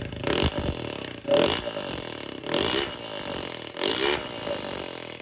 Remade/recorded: recorded